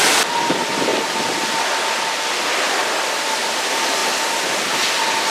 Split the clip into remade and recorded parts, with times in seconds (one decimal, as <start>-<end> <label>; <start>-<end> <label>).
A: 0.0-5.3 recorded